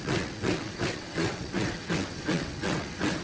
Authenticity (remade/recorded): remade